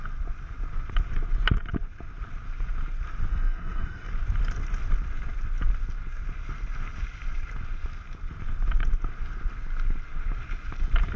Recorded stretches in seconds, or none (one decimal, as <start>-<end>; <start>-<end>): 0.0-3.3; 4.1-11.2